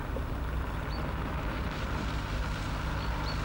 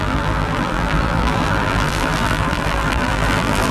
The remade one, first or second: second